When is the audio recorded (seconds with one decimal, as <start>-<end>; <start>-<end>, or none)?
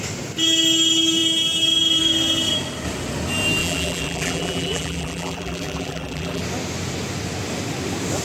0.0-3.6; 6.4-8.2